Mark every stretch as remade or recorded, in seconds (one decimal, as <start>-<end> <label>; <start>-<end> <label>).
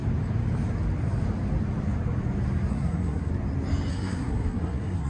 0.0-2.7 recorded; 2.7-3.3 remade; 3.3-3.9 recorded; 3.9-5.1 remade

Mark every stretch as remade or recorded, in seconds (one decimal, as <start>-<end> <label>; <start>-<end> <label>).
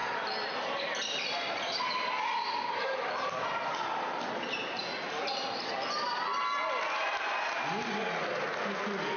0.0-1.8 remade; 1.8-9.2 recorded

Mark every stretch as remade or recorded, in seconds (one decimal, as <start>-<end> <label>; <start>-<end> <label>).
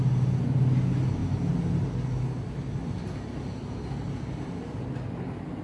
0.0-5.6 recorded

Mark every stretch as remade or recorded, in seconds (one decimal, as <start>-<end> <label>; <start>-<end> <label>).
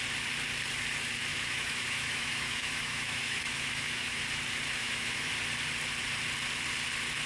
0.0-1.3 recorded; 1.3-4.2 remade; 4.2-4.8 recorded; 4.8-5.3 remade; 5.3-7.3 recorded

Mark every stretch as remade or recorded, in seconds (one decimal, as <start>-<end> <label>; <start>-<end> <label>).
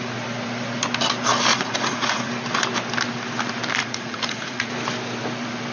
0.0-1.5 recorded; 1.5-2.3 remade; 2.3-3.8 recorded; 3.8-4.7 remade; 4.7-5.7 recorded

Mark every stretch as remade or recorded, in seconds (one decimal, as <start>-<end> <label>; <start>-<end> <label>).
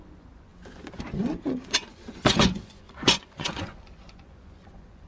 0.0-5.1 remade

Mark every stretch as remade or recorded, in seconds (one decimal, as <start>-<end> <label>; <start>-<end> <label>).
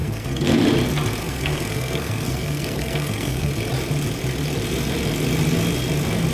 0.0-0.6 remade; 0.6-1.2 recorded; 1.2-3.5 remade; 3.5-6.3 recorded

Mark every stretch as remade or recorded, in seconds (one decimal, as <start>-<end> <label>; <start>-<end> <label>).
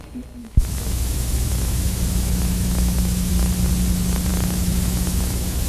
0.0-0.4 recorded; 0.4-3.3 remade; 3.3-4.3 recorded; 4.3-5.7 remade